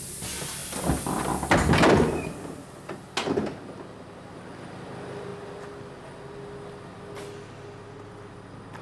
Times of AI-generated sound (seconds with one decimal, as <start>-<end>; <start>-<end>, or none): none

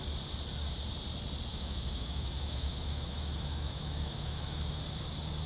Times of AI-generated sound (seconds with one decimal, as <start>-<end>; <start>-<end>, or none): 1.5-4.8

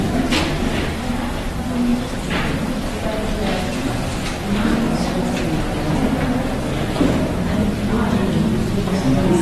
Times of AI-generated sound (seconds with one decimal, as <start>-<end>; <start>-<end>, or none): 1.9-2.5

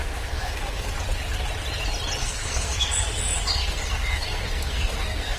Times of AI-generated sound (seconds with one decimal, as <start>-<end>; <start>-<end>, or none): 0.0-0.9; 2.2-5.4

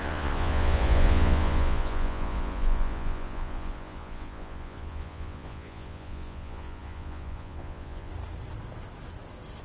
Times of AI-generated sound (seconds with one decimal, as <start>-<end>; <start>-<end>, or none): 0.0-8.1